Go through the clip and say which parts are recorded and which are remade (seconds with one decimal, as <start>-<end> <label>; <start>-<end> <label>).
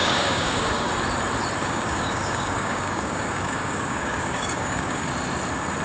0.0-0.9 remade; 0.9-1.6 recorded; 1.6-5.1 remade; 5.1-5.8 recorded